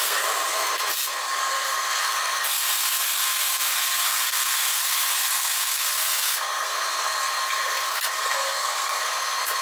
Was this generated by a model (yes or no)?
yes